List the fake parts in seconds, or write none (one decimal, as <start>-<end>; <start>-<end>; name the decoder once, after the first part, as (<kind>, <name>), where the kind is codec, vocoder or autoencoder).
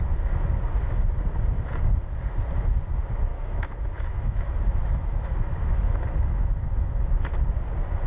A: 3.3-7.1 (autoencoder, DAC-VAE)